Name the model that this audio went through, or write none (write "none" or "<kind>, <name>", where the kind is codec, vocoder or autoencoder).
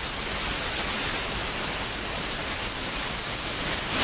none